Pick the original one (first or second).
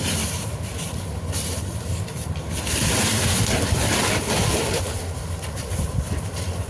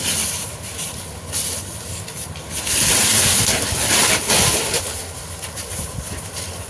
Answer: second